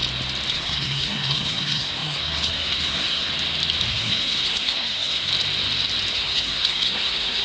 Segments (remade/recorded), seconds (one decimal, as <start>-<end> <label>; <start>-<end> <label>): 0.0-0.5 recorded; 0.5-3.3 remade; 3.3-3.9 recorded; 3.9-5.3 remade; 5.3-6.1 recorded; 6.1-7.4 remade